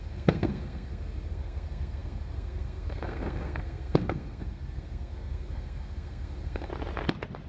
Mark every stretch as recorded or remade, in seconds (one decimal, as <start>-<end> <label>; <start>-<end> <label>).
0.0-6.7 remade; 6.7-7.5 recorded